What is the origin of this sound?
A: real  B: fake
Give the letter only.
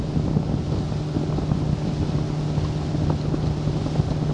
A